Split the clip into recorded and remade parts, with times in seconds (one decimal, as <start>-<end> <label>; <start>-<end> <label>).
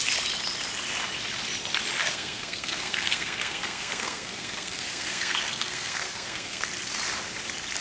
0.0-2.0 recorded; 2.0-6.7 remade; 6.7-7.8 recorded